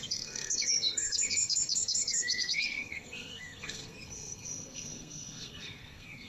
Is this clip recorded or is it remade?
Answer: remade